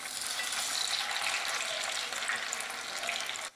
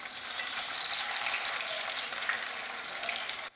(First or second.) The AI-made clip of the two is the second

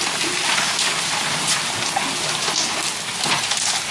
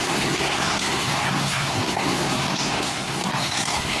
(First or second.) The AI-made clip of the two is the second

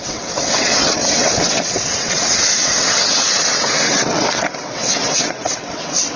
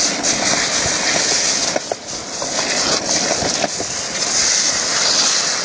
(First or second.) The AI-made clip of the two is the first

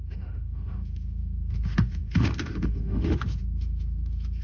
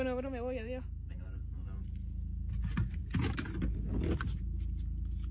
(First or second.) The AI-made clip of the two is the first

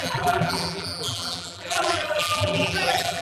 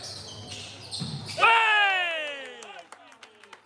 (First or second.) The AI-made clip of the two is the first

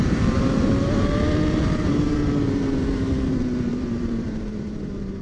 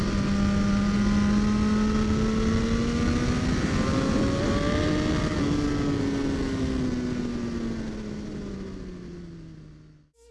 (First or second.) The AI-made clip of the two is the first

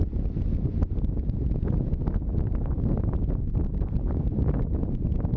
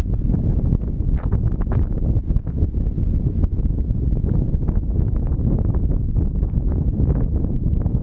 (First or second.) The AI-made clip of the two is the second